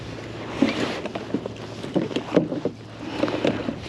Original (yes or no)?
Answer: yes